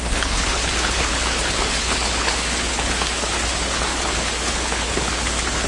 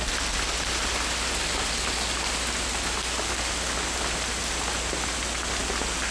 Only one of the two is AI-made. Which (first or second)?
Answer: first